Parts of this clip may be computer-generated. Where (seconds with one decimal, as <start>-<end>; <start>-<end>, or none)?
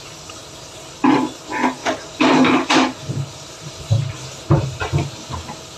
1.8-5.3